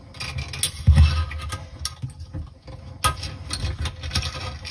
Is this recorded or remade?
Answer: recorded